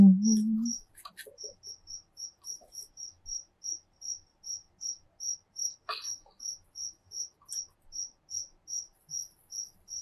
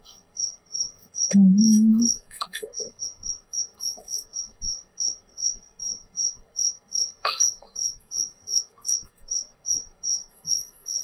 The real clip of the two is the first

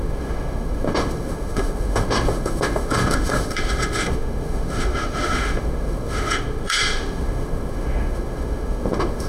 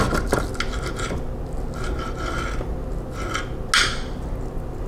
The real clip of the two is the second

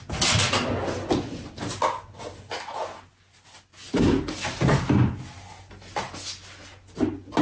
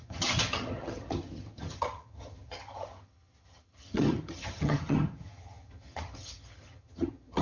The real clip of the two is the first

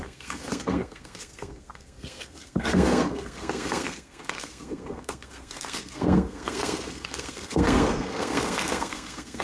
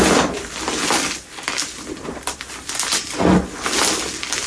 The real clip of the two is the second